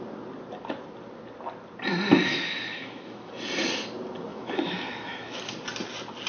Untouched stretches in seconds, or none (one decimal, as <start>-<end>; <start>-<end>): 0.0-2.3; 3.3-4.3; 5.4-6.3